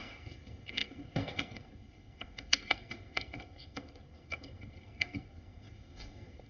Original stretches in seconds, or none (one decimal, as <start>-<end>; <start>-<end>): none